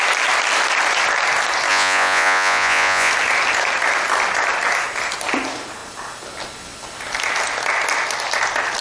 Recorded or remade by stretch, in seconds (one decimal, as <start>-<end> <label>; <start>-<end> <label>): 0.0-1.7 recorded; 1.7-3.1 remade; 3.1-8.8 recorded